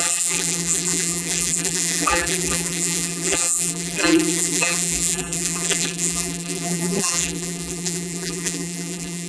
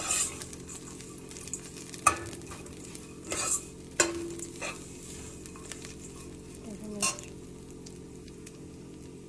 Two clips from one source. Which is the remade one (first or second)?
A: first